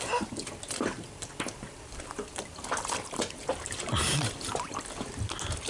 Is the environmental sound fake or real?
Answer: real